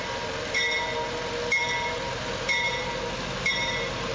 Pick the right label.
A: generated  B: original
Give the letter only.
B